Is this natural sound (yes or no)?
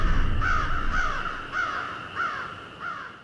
yes